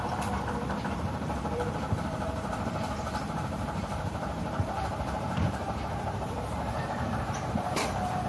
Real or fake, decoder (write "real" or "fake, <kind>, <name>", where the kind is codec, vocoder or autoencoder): fake, vocoder, BigVGAN v2